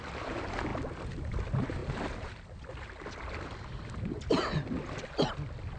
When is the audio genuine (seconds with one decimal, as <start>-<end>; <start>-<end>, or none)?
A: 0.0-5.8